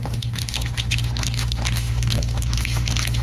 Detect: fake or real fake